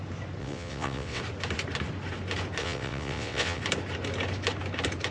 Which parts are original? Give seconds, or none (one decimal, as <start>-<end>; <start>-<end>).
0.0-0.4; 1.2-2.6; 3.6-5.1